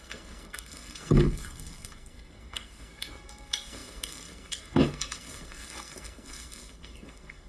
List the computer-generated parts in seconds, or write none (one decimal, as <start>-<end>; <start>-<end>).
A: 0.0-7.5